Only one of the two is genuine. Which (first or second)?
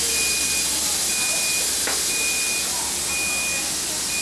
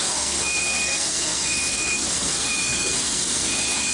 first